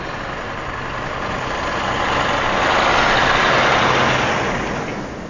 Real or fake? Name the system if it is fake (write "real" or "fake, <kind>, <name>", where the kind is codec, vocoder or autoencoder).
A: real